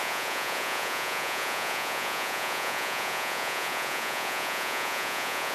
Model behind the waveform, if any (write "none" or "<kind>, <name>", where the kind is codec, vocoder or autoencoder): vocoder, Vocos